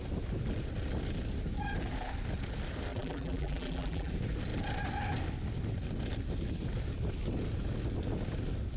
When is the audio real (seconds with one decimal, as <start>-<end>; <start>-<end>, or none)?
0.0-2.9; 4.1-8.8